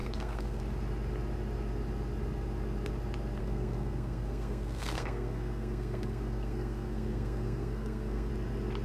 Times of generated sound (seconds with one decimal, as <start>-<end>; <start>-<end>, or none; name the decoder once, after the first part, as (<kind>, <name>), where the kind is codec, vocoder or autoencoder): 0.0-0.6 (codec, SNAC); 3.4-8.3